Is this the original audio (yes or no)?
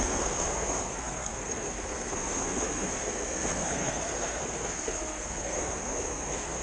no